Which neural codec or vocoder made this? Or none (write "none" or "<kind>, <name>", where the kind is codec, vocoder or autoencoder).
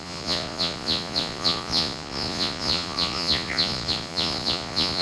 vocoder, Vocos